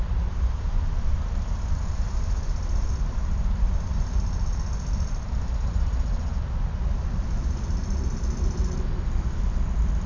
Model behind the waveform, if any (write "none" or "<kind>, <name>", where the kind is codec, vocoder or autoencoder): none